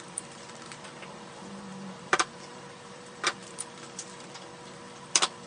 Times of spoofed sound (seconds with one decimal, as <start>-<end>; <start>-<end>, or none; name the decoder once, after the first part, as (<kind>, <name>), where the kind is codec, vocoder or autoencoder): 0.0-5.5 (vocoder, BigVGAN v2)